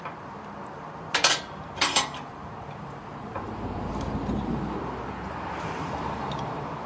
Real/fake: fake